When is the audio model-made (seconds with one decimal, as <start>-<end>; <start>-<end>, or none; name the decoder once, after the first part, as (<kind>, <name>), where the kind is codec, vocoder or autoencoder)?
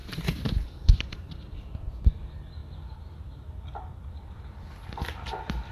0.0-1.3 (vocoder, BigVGAN v2)